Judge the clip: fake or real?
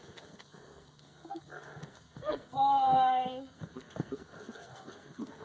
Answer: fake